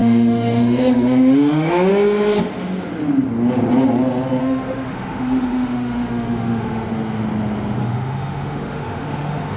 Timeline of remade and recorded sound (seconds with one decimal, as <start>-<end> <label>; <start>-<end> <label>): 0.0-1.9 remade; 1.9-4.4 recorded; 4.4-6.9 remade; 6.9-7.8 recorded; 7.8-9.6 remade